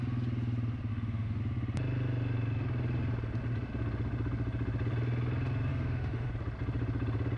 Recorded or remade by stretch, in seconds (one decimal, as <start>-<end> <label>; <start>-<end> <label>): 0.0-0.9 recorded; 0.9-1.4 remade; 1.4-5.7 recorded; 5.7-6.3 remade; 6.3-7.4 recorded